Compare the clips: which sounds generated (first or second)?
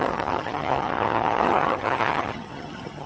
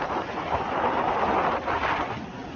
first